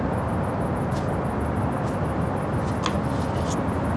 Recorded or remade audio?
recorded